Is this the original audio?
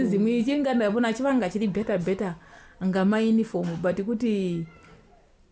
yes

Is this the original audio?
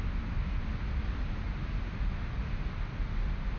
yes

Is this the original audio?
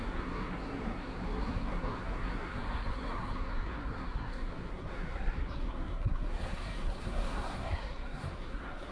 no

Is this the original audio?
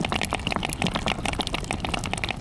yes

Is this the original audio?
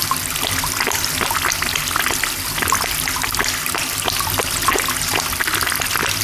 yes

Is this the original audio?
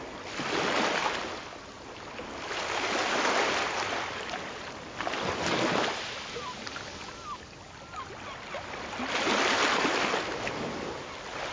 yes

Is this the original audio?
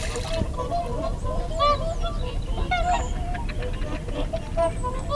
yes